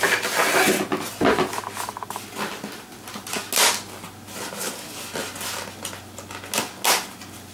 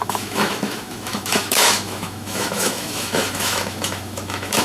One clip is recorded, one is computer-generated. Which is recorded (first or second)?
first